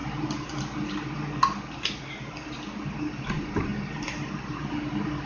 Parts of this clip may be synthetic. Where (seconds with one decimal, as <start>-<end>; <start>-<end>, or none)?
3.2-3.7